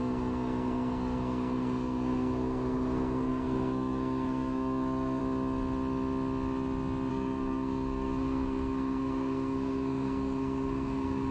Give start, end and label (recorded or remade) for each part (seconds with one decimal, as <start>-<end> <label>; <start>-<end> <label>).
0.0-5.2 remade; 5.2-7.1 recorded; 7.1-11.3 remade

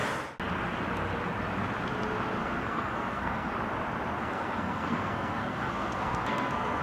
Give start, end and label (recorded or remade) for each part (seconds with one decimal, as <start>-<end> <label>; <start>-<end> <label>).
0.0-2.4 recorded; 2.4-3.5 remade; 3.5-4.2 recorded; 4.2-6.8 remade

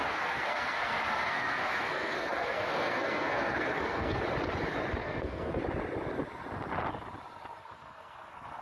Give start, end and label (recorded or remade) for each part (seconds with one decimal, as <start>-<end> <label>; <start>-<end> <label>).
0.0-4.2 remade; 4.2-5.0 recorded; 5.0-5.6 remade; 5.6-7.6 recorded; 7.6-8.6 remade

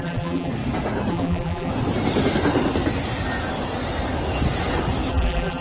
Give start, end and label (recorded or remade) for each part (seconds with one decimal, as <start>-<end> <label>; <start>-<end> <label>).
0.0-0.5 remade; 0.5-1.1 recorded; 1.1-1.7 remade; 1.7-5.1 recorded; 5.1-5.6 remade

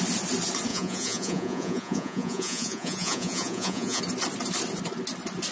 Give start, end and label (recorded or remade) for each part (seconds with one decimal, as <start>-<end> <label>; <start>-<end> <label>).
0.0-0.7 recorded; 0.7-4.0 remade; 4.0-5.5 recorded

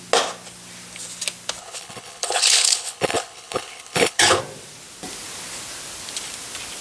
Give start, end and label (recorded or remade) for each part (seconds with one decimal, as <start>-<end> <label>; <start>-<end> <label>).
0.0-1.6 recorded; 1.6-4.4 remade; 4.4-6.8 recorded

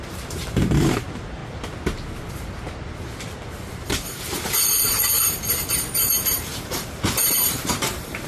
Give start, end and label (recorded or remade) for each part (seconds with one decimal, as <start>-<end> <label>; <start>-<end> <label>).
0.0-1.4 remade; 1.4-3.7 recorded; 3.7-8.3 remade

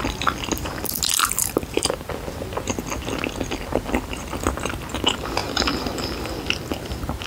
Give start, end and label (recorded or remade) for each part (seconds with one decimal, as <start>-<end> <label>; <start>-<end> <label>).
0.0-1.2 recorded; 1.2-2.1 remade; 2.1-7.3 recorded